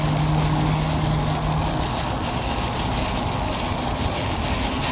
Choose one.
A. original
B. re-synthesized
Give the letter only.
A